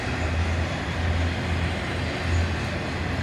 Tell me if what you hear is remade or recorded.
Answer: recorded